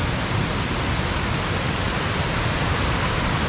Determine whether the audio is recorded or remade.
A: recorded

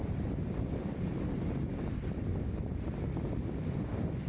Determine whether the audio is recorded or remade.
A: recorded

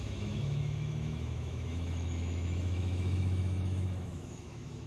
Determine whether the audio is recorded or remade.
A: remade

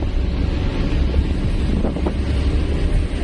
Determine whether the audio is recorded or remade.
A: recorded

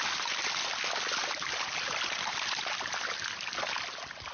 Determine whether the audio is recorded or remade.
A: recorded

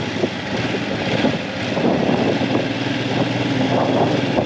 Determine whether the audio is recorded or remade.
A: recorded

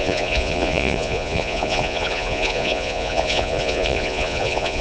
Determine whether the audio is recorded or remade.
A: remade